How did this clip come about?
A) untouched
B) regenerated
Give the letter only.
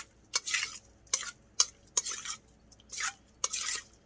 A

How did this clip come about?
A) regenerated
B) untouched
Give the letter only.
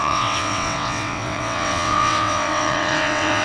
A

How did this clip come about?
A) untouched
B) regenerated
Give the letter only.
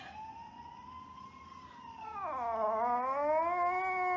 A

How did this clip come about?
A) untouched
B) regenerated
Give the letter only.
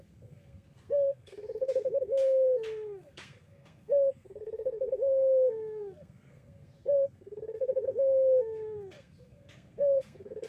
B